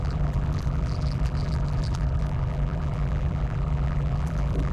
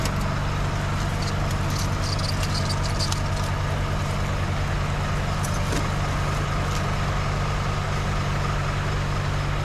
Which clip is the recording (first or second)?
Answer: second